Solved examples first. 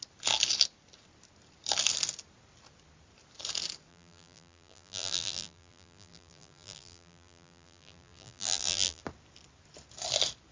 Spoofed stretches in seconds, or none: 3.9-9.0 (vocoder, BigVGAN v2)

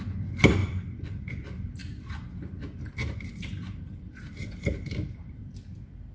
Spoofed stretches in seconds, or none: 0.6-1.3 (vocoder, BigVGAN v2); 1.8-5.4

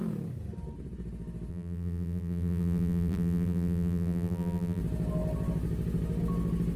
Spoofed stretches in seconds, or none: 1.5-4.8 (vocoder, BigVGAN v2)